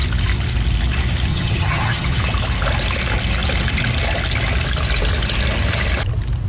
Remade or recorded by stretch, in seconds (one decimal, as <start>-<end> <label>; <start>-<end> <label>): 0.0-1.3 recorded; 1.3-2.2 remade; 2.2-6.5 recorded